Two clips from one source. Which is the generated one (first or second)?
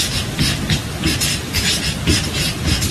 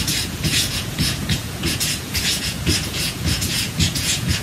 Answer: second